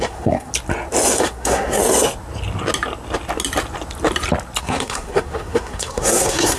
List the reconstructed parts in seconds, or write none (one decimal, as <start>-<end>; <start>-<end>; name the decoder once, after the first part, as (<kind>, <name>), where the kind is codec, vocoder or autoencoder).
0.0-0.5 (codec, SNAC); 1.2-1.8; 4.6-6.6